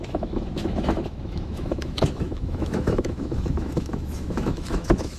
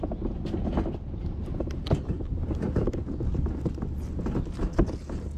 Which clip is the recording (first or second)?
second